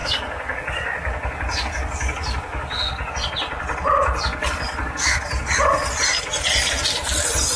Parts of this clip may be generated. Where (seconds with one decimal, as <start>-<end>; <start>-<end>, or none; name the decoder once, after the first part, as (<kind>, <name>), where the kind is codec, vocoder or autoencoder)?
0.0-3.1 (codec, DAC); 4.4-5.3